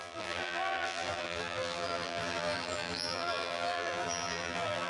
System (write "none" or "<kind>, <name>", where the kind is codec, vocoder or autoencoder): vocoder, BigVGAN v2